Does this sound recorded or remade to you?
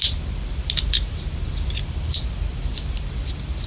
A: recorded